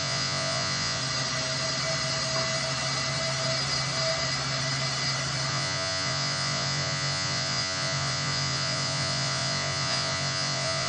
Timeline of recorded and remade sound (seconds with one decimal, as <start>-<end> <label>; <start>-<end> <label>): 0.0-1.0 remade; 1.0-5.5 recorded; 5.5-10.9 remade